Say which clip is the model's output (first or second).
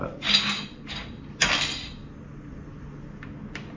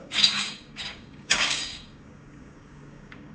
second